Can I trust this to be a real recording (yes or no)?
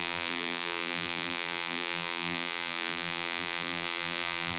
no